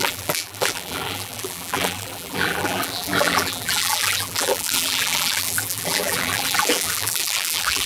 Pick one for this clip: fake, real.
fake